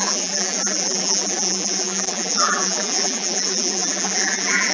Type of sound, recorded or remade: remade